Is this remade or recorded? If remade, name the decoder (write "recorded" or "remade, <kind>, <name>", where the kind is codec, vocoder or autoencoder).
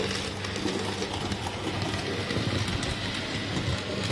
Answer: recorded